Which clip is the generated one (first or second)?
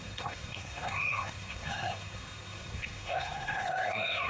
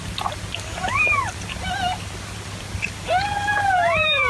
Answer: first